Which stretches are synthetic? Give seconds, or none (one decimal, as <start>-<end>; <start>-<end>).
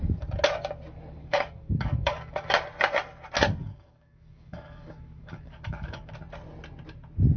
1.2-2.5; 3.6-6.1